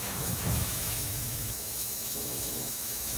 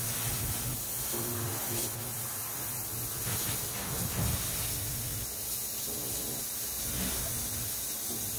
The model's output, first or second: first